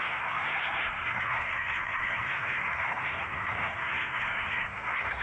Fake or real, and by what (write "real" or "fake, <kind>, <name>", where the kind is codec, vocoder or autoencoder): fake, codec, SNAC